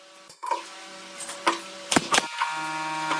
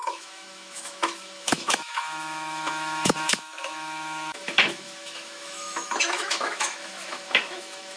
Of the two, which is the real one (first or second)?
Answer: first